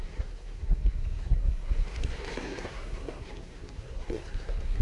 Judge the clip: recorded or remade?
remade